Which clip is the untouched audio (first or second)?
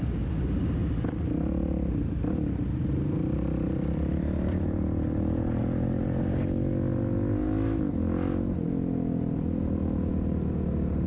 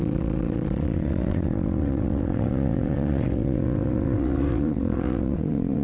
first